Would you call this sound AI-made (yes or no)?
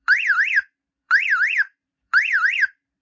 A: yes